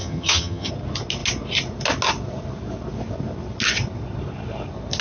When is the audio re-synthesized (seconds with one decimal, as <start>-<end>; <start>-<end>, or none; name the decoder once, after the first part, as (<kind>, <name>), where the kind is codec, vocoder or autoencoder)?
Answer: 0.0-0.7 (vocoder, HiFi-GAN)

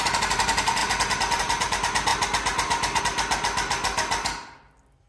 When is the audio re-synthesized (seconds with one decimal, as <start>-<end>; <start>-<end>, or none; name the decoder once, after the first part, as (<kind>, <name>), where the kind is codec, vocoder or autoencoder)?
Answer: none